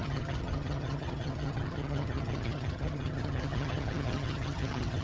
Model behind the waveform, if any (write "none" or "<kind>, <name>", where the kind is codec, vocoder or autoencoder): vocoder, HiFi-GAN